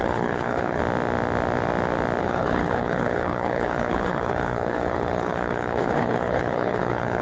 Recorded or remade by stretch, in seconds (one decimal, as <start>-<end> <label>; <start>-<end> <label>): 0.0-0.8 remade; 0.8-2.2 recorded; 2.2-7.2 remade